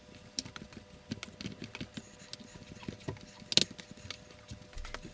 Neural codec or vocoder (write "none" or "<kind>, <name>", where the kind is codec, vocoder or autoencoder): none